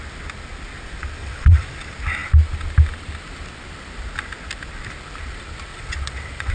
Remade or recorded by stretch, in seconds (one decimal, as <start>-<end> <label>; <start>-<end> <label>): 0.0-1.2 recorded; 1.2-1.8 remade; 1.8-5.7 recorded; 5.7-6.5 remade